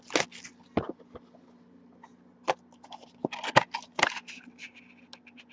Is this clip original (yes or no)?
yes